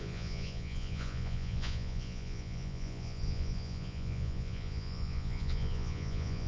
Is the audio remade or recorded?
remade